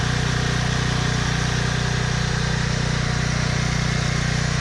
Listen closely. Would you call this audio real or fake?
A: real